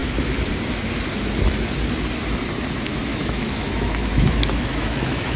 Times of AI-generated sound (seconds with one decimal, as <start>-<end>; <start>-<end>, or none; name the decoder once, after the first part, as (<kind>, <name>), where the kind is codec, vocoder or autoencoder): 3.1-5.4 (autoencoder, DAC-VAE)

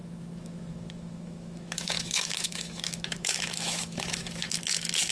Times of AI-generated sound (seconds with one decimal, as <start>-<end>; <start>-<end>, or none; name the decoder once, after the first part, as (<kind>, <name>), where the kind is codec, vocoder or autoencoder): 0.0-5.1 (autoencoder, DAC-VAE)

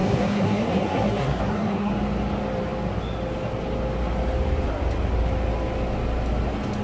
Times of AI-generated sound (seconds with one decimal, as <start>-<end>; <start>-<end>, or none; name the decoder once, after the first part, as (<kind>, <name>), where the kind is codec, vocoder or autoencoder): 0.0-1.9 (codec, SNAC)